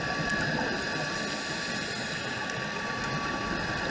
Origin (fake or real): real